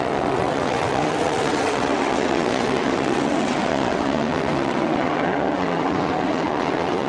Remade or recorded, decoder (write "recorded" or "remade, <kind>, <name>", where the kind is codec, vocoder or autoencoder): remade, vocoder, WaveNeXt